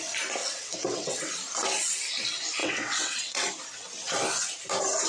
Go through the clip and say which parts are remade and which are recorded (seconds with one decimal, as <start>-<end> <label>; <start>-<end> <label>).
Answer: 0.0-0.4 recorded; 0.4-1.4 remade; 1.4-2.6 recorded; 2.6-3.5 remade; 3.5-5.1 recorded

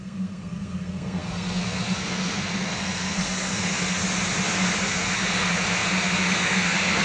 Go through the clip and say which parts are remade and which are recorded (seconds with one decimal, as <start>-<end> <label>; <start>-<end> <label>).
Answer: 0.0-4.0 remade; 4.0-4.8 recorded; 4.8-7.0 remade